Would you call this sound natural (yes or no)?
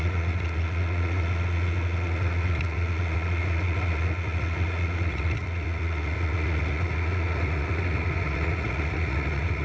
no